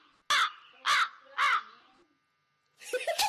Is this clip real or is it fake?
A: real